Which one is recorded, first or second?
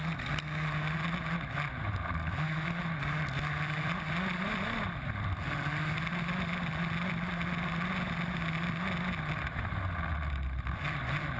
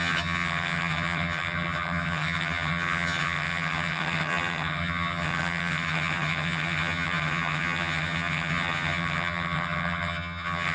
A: first